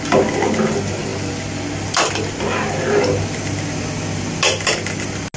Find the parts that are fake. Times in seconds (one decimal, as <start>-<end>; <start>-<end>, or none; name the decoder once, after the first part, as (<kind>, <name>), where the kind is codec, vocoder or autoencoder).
none